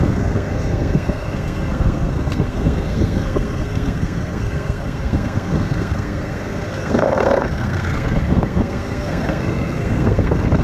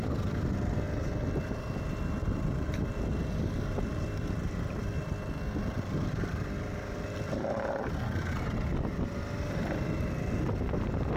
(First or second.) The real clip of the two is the second